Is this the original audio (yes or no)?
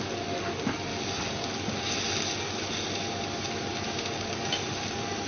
yes